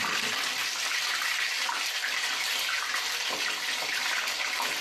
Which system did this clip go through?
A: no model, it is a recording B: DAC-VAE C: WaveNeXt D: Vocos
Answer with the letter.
A